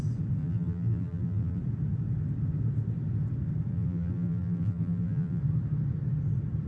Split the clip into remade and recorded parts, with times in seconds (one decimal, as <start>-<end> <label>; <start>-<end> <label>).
0.0-0.4 recorded; 0.4-1.6 remade; 1.6-3.7 recorded; 3.7-5.4 remade; 5.4-6.7 recorded